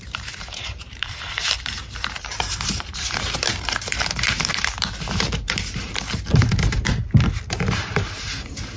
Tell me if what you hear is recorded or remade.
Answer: remade